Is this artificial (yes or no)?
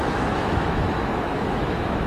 yes